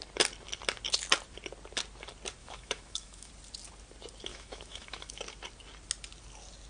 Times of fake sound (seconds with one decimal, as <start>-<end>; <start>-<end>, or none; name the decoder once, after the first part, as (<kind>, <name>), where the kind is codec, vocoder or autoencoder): 2.4-3.3 (autoencoder, DAC-VAE); 4.3-5.2